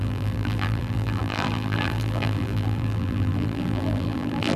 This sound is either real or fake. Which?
fake